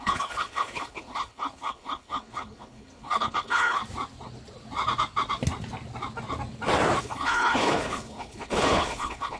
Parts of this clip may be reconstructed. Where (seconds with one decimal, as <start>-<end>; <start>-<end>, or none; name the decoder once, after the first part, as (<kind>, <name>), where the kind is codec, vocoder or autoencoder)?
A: 0.0-3.8 (codec, HILCodec); 7.0-9.4